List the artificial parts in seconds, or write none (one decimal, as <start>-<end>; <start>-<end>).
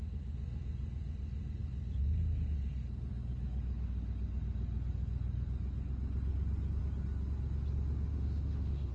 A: 8.1-8.9